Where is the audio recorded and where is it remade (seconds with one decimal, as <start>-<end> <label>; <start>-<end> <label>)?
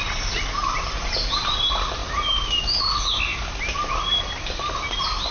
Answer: 0.0-5.3 recorded